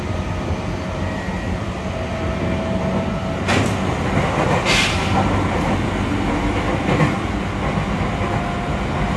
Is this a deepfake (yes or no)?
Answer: no